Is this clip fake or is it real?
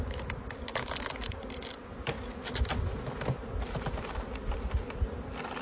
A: real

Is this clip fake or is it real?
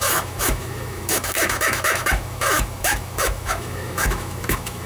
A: fake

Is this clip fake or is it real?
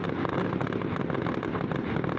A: real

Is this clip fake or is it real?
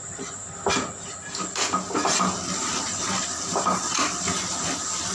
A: real